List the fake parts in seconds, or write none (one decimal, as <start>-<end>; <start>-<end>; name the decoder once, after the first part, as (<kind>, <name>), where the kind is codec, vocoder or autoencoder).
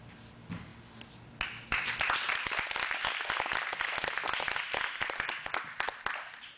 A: none